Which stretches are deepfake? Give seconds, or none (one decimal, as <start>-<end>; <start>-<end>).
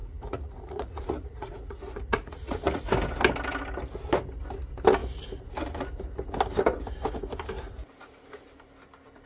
0.0-2.8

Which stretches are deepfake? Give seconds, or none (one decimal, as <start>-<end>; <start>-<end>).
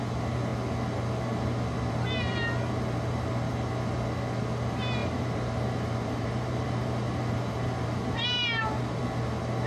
5.0-9.0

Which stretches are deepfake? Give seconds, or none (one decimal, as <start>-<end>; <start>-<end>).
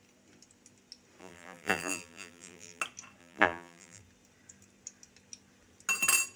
1.2-2.8; 3.2-4.0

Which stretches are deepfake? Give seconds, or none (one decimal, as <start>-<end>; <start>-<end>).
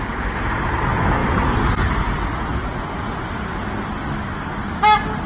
none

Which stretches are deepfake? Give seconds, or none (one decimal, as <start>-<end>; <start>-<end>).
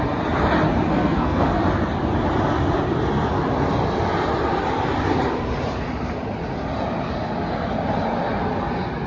0.9-1.6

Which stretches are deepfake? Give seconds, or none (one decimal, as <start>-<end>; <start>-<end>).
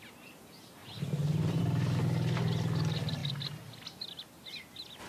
none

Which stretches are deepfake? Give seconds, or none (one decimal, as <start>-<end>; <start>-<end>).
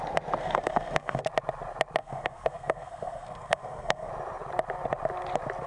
0.4-1.2; 2.0-4.1